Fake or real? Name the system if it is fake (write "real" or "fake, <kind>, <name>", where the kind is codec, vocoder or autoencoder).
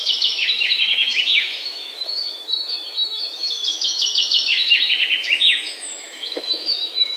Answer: fake, autoencoder, DAC-VAE